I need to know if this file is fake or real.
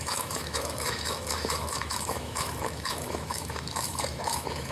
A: fake